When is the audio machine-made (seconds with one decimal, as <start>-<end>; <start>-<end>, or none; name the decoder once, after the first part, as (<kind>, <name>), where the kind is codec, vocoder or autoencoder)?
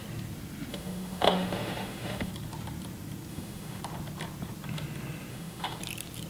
0.7-2.3 (autoencoder, DAC-VAE); 3.3-3.8; 5.3-5.8